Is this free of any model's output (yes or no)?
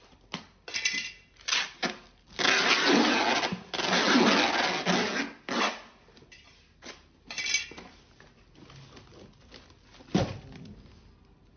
yes